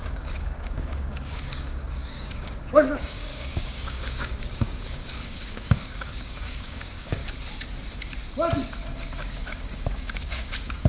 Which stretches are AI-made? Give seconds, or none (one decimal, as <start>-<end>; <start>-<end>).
0.0-7.2; 8.9-10.9

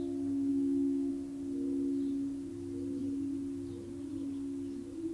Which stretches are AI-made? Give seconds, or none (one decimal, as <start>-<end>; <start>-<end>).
0.5-1.1

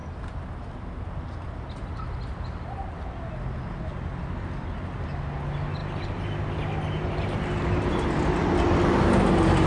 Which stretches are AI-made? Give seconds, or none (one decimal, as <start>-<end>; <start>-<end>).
none

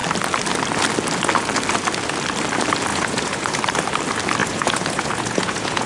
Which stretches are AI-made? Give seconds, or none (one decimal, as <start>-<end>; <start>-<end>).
2.9-3.6; 4.4-5.9

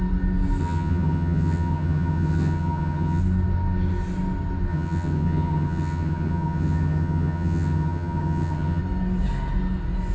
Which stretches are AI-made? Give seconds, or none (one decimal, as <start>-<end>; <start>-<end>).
0.6-3.2; 4.7-8.8

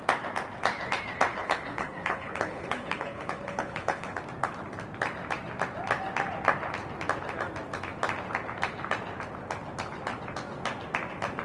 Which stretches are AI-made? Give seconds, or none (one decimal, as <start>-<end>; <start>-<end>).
1.3-4.2

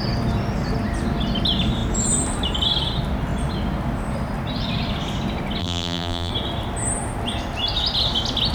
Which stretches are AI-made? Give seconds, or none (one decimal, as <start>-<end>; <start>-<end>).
5.6-6.3